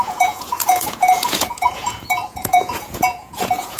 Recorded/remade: remade